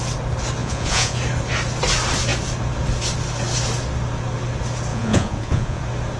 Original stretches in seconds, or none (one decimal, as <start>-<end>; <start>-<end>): 0.0-0.6; 1.2-4.9; 5.8-6.2